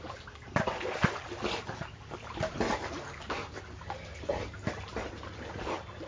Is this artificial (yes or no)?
no